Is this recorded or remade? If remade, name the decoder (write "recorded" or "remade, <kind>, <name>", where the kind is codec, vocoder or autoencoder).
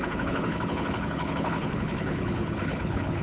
remade, codec, HILCodec